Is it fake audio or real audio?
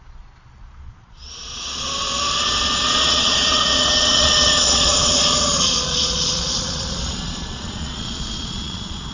fake